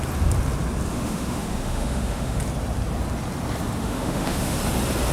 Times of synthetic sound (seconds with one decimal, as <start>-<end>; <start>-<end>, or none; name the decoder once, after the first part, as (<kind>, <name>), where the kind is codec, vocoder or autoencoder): 0.9-2.4 (autoencoder, DAC-VAE); 3.8-4.6